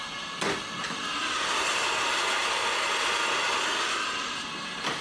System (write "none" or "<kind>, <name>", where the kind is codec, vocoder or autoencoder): none